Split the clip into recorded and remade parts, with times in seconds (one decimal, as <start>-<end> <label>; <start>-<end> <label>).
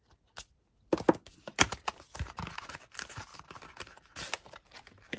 0.0-5.2 recorded